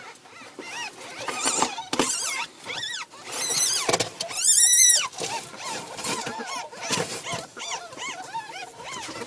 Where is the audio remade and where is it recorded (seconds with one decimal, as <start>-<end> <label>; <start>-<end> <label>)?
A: 0.0-0.9 recorded; 0.9-3.5 remade; 3.5-4.8 recorded; 4.8-9.3 remade